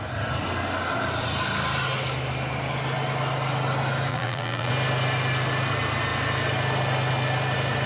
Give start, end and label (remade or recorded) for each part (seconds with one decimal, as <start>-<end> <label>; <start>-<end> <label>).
0.0-4.1 recorded; 4.1-4.7 remade; 4.7-7.9 recorded